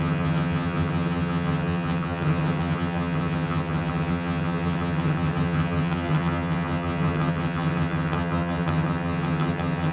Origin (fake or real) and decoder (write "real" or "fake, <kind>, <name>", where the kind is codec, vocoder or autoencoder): fake, vocoder, HiFi-GAN